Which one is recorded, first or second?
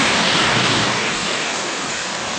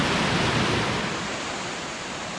second